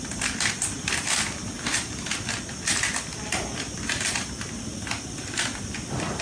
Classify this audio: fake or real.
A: real